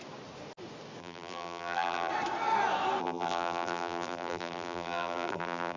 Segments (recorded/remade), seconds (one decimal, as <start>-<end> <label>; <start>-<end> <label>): 0.0-1.0 recorded; 1.0-2.1 remade; 2.1-3.0 recorded; 3.0-5.8 remade